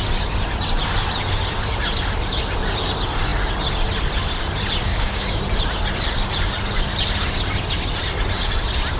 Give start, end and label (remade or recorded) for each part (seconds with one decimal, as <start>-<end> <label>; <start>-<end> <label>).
0.0-4.9 recorded; 4.9-5.4 remade; 5.4-9.0 recorded